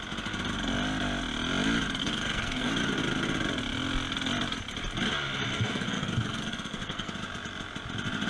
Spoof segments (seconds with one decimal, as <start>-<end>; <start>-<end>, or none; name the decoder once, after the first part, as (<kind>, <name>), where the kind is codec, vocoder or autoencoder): 2.0-2.7 (codec, SNAC); 5.5-7.1